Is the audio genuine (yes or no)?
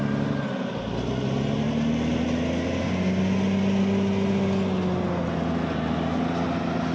yes